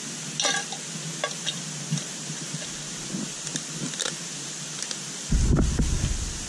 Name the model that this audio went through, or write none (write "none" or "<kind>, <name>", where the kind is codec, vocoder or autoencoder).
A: none